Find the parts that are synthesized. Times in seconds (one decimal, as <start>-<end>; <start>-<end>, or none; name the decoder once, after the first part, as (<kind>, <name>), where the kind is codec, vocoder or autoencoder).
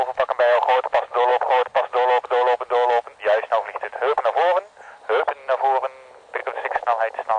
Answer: 6.4-7.0 (autoencoder, DAC-VAE)